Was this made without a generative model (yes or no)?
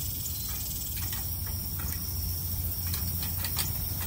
yes